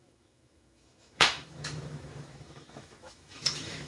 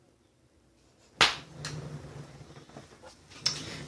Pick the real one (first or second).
second